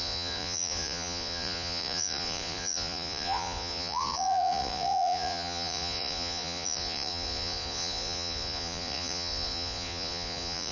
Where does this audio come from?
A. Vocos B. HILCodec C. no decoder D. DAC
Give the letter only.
A